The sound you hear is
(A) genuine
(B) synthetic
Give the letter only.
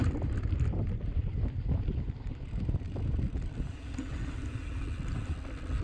A